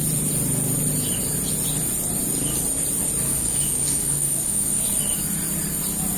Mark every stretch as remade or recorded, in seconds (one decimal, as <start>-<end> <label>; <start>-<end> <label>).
0.0-3.3 recorded; 3.3-4.8 remade; 4.8-6.2 recorded